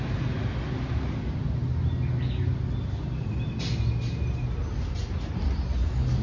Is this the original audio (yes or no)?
yes